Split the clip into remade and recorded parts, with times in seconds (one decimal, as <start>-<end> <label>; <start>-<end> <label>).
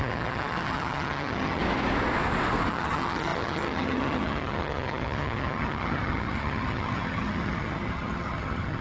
0.0-1.6 remade; 1.6-2.7 recorded; 2.7-8.8 remade